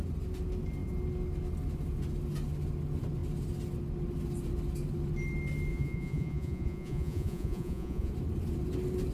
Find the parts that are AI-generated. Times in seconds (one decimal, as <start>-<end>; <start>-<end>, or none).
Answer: 5.7-8.1